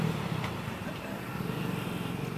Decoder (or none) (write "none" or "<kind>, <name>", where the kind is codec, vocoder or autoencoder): none